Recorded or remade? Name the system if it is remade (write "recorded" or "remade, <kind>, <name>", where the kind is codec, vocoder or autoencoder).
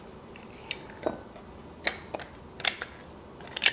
recorded